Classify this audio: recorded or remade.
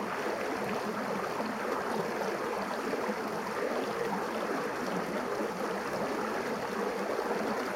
recorded